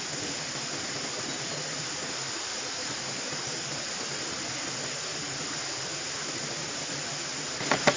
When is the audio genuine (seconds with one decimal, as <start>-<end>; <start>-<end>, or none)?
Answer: 0.0-2.8; 3.9-8.0

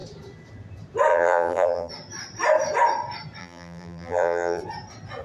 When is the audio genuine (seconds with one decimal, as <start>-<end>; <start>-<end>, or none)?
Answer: 0.0-1.1; 1.9-3.4; 4.6-5.2

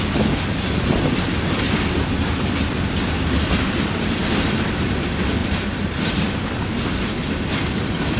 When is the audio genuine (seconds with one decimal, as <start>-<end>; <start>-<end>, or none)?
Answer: 0.0-5.4; 6.1-8.2

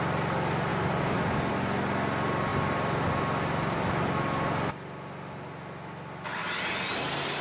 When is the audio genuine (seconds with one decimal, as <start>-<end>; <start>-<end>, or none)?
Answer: 0.0-0.7; 1.5-7.4